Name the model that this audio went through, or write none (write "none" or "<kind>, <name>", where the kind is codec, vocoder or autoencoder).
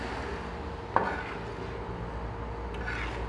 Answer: none